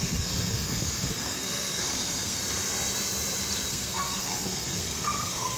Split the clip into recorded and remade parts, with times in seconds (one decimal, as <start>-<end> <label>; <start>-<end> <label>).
0.0-2.4 remade; 2.4-3.7 recorded; 3.7-5.6 remade